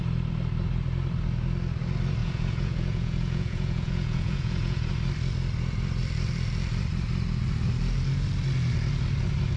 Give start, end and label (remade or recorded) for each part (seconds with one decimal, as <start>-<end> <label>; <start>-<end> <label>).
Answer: 0.0-2.2 recorded; 2.2-4.9 remade; 4.9-9.6 recorded